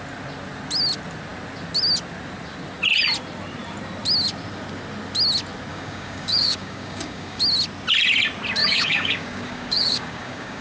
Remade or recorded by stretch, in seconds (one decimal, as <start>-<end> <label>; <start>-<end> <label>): 0.0-5.7 recorded; 5.7-7.4 remade; 7.4-8.6 recorded; 8.6-10.6 remade